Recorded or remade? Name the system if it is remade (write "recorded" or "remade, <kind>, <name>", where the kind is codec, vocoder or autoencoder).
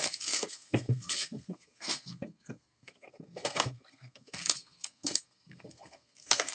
remade, codec, SNAC